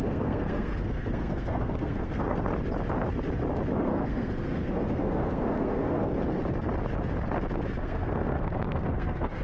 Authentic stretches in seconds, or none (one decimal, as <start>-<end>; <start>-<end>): 2.5-3.8; 6.1-7.8